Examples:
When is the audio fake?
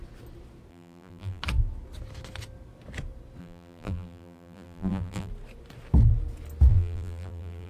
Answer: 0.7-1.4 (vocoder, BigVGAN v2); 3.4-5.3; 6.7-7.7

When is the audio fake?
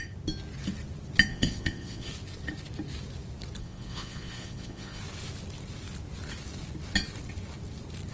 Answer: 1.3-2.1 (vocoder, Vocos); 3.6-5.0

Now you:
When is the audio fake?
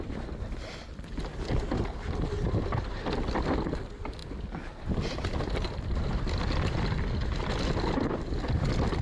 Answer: none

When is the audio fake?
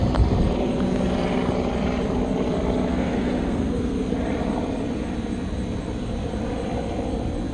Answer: 2.9-4.1 (codec, SNAC)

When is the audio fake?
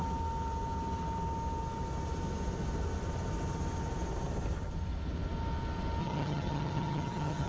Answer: 6.0-7.5 (vocoder, HiFi-GAN)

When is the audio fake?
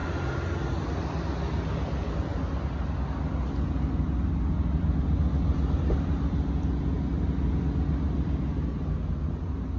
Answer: none